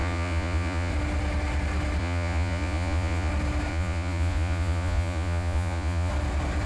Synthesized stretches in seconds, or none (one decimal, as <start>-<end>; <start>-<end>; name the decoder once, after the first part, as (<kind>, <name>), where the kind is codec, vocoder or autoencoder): 0.0-0.9 (vocoder, Vocos); 2.0-3.3; 3.7-6.1